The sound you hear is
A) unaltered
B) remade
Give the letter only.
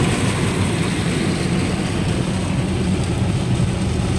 A